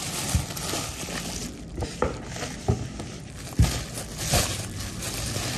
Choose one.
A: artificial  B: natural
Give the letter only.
B